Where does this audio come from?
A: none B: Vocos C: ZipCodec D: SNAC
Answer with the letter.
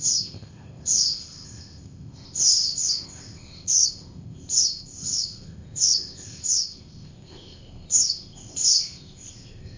C